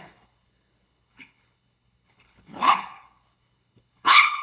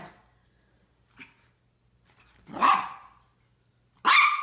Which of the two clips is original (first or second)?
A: second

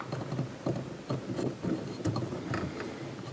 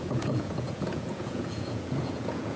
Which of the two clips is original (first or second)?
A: first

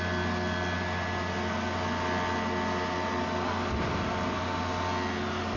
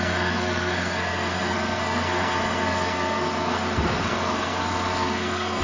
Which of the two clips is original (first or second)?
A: first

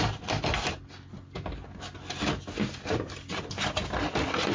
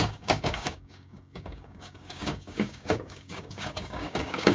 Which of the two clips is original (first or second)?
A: first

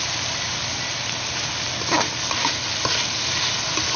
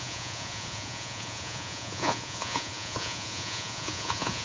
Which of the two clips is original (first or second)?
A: first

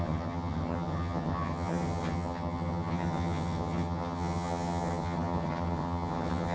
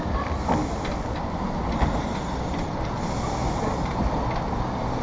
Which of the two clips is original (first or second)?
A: second